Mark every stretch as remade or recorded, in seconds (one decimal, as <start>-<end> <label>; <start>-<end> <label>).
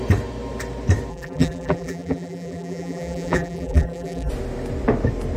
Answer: 0.0-1.1 recorded; 1.1-4.3 remade; 4.3-5.4 recorded